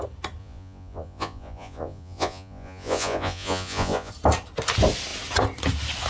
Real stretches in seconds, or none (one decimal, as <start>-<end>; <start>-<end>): 0.0-0.4; 4.1-6.1

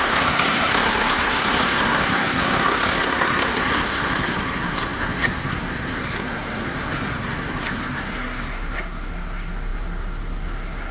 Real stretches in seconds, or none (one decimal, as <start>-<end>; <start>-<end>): none

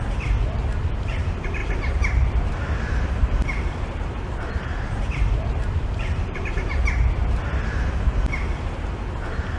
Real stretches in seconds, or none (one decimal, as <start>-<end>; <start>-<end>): 0.0-1.6; 6.8-9.6

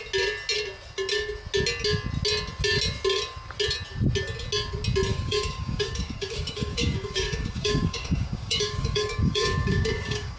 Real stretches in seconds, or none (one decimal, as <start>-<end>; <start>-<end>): 0.0-5.1